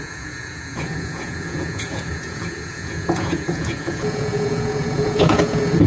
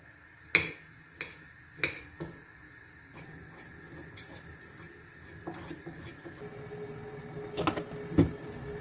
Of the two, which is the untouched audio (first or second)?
second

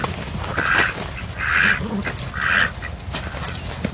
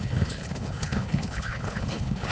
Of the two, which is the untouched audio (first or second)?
first